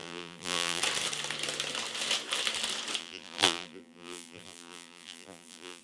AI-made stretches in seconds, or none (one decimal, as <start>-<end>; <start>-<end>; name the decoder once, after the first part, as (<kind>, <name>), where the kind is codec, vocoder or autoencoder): 0.0-0.8 (vocoder, BigVGAN v2); 3.0-5.8